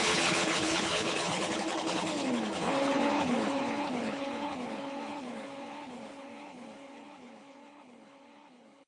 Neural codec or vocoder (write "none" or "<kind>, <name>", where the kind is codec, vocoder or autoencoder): codec, HILCodec